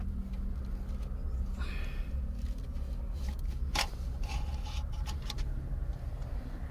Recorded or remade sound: recorded